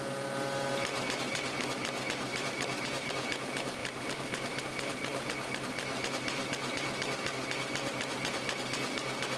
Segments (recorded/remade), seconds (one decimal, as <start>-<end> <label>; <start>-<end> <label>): 0.0-2.3 recorded; 2.3-3.1 remade; 3.1-3.8 recorded; 3.8-4.6 remade; 4.6-9.4 recorded